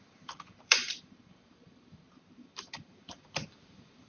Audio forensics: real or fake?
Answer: fake